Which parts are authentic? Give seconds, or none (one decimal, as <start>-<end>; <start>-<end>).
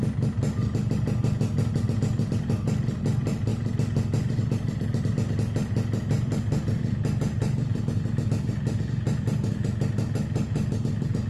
0.0-11.3